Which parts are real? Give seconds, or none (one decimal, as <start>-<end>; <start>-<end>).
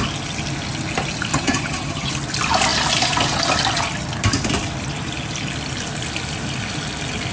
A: 0.0-1.3; 2.1-7.3